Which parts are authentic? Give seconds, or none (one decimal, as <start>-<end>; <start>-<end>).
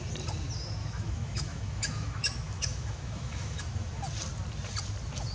0.0-0.8; 4.0-5.3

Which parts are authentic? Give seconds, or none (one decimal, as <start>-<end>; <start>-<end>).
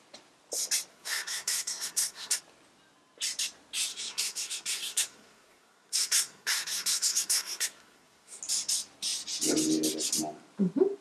0.0-0.9; 2.4-3.9; 8.4-11.0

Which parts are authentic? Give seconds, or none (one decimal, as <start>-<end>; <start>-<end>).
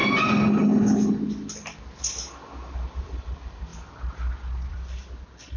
0.0-3.0; 3.7-4.7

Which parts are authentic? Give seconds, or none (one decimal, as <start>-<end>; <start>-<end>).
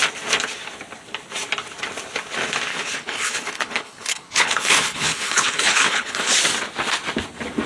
0.0-2.7; 6.3-7.7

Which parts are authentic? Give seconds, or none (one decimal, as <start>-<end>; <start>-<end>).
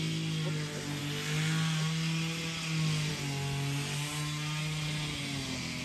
0.0-5.8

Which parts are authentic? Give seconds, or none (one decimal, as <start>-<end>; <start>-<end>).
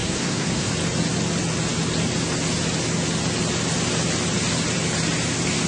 0.7-5.7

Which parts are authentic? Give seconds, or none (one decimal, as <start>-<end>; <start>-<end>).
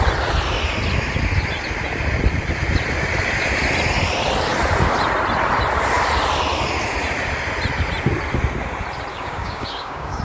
0.0-9.1